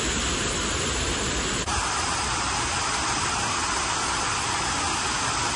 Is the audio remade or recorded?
recorded